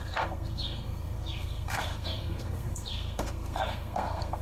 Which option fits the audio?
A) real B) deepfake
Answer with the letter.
B